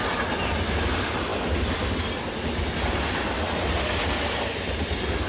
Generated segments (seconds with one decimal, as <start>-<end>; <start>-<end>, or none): none